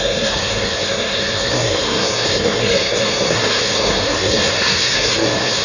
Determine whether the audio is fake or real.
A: fake